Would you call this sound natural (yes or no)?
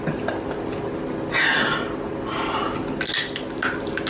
yes